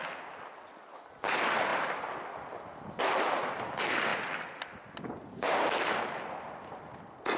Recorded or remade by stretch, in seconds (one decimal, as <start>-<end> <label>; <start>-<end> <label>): 0.0-7.4 recorded